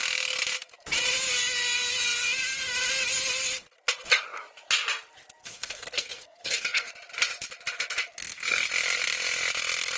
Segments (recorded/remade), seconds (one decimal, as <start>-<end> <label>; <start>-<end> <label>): 0.0-5.4 recorded; 5.4-6.9 remade; 6.9-8.1 recorded; 8.1-8.7 remade; 8.7-10.0 recorded

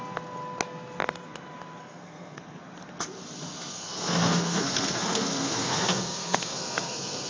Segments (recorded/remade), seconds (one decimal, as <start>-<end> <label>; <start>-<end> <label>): 0.0-1.8 recorded; 1.8-2.6 remade; 2.6-3.7 recorded; 3.7-7.3 remade

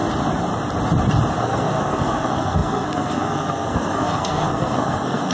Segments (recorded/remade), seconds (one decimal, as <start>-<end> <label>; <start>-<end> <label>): 0.0-1.4 recorded; 1.4-5.3 remade